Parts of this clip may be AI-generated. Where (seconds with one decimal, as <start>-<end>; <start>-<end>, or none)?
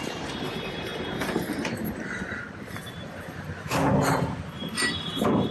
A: 0.0-5.5